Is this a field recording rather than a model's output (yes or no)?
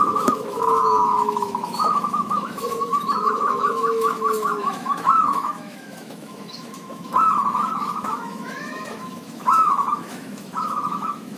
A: no